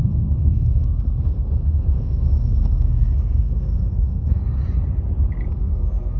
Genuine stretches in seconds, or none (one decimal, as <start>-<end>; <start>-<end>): 4.4-5.5